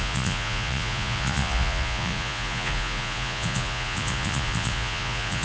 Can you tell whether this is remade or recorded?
remade